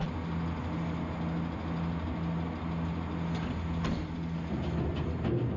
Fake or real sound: real